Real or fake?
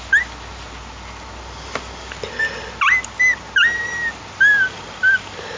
real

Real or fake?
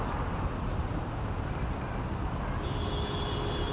real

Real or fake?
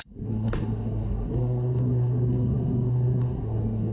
fake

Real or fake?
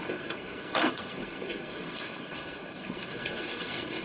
fake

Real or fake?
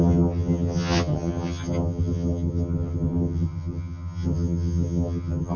fake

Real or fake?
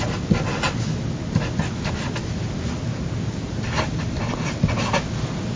real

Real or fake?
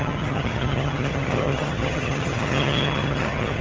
fake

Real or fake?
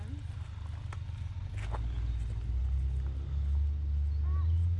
real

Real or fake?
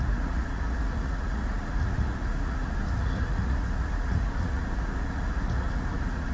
fake